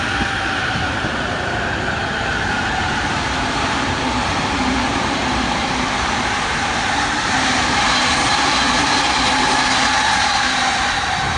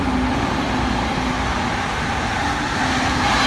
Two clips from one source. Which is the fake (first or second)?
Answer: first